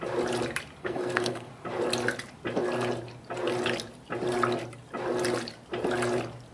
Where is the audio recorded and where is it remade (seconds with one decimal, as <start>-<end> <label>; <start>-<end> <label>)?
0.0-0.8 recorded; 0.8-1.5 remade; 1.5-6.5 recorded